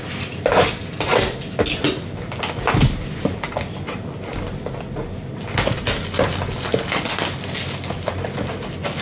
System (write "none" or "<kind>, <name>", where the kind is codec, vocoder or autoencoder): none